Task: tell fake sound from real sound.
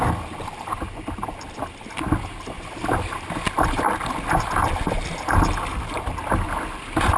real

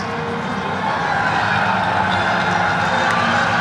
real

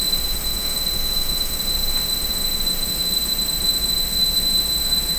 fake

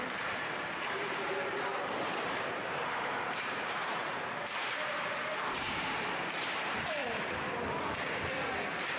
fake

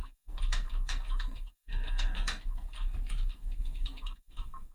fake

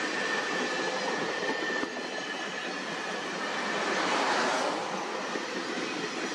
real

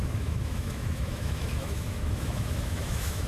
fake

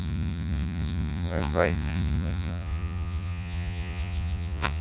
fake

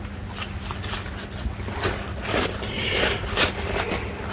real